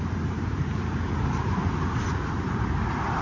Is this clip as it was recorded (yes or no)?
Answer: no